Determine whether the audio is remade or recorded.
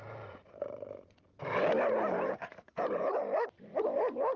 recorded